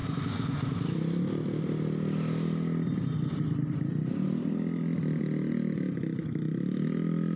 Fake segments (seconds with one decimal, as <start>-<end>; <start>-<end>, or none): none